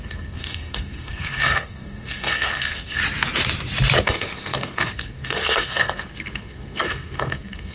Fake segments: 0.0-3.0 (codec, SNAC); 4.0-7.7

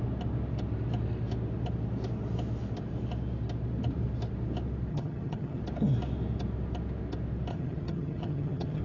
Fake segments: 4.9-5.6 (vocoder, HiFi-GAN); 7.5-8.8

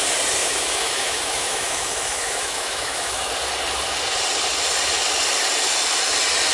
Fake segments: 0.4-3.3 (autoencoder, DAC-VAE)